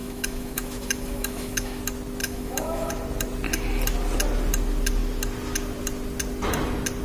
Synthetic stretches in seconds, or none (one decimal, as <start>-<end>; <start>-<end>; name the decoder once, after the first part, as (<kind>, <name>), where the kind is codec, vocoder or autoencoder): 0.0-1.8 (autoencoder, DAC-VAE); 2.2-2.9